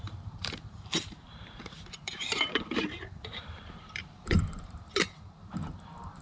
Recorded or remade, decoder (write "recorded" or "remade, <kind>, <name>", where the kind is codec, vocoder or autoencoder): remade, vocoder, BigVGAN v2